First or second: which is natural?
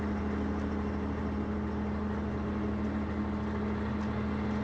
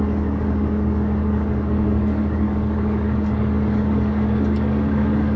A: first